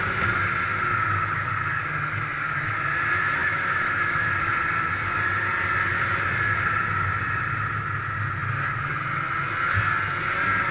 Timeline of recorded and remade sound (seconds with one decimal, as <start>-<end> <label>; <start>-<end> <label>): 0.0-3.4 recorded; 3.4-4.3 remade; 4.3-10.7 recorded